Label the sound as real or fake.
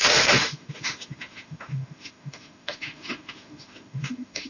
fake